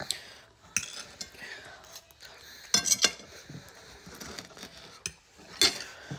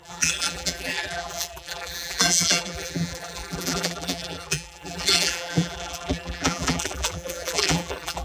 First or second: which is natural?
first